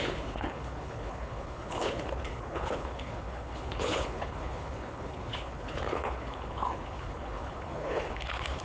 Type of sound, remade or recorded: remade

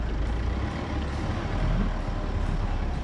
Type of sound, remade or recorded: recorded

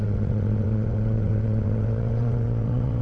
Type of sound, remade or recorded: remade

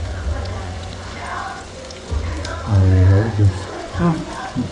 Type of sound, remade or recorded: remade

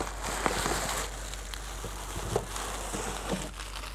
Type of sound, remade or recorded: recorded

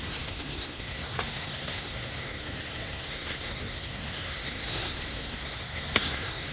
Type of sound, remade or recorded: remade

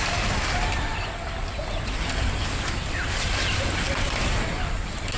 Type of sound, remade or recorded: recorded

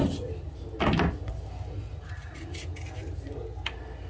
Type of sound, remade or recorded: recorded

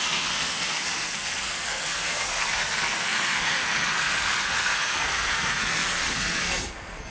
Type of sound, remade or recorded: remade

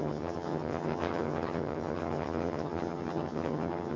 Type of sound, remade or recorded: remade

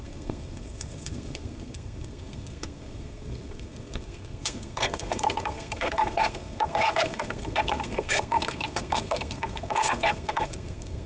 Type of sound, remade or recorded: remade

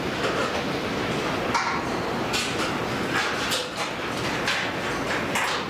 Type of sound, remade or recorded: recorded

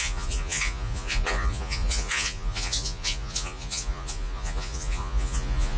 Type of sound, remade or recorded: remade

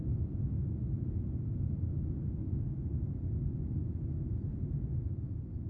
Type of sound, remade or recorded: recorded